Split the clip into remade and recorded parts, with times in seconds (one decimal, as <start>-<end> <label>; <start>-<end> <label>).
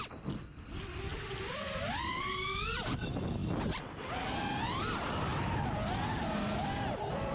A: 0.0-1.1 recorded; 1.1-1.8 remade; 1.8-7.3 recorded